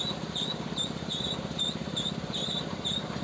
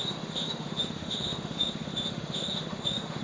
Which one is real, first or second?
first